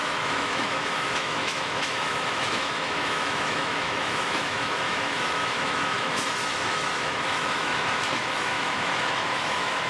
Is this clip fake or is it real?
fake